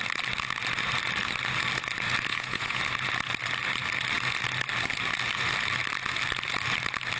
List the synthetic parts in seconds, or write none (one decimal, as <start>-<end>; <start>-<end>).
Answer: 2.3-2.8